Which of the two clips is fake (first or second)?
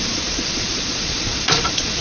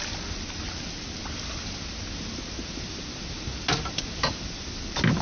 first